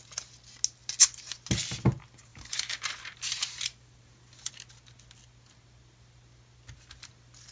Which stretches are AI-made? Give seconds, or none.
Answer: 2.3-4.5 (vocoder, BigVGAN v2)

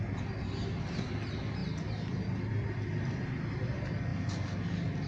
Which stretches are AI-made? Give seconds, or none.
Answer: none

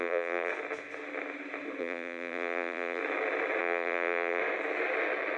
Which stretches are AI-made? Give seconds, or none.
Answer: 0.0-0.5 (vocoder, BigVGAN v2); 1.8-3.0; 3.6-4.4

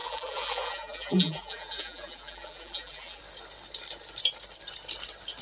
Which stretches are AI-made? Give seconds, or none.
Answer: 0.0-3.2 (vocoder, BigVGAN v2)